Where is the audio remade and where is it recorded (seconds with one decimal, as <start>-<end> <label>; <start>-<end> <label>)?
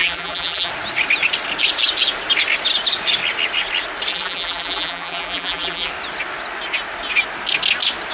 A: 0.0-0.7 remade; 0.7-4.1 recorded; 4.1-5.9 remade; 5.9-8.1 recorded